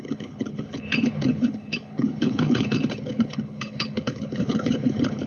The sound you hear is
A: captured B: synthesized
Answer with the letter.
B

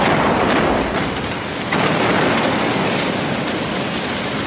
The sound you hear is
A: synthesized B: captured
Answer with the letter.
B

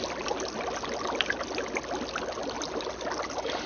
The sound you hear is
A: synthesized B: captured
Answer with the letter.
B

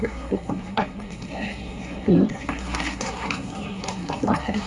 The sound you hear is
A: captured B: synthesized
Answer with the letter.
B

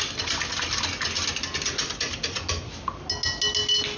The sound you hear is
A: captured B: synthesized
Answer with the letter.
A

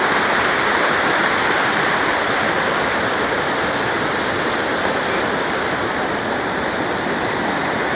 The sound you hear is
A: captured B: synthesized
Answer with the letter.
A